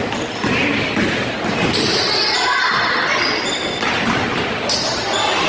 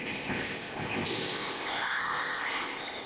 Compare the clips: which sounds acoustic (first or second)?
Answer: first